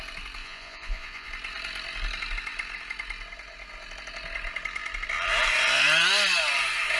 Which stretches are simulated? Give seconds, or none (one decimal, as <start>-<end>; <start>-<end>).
0.4-1.3